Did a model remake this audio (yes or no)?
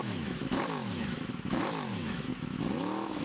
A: yes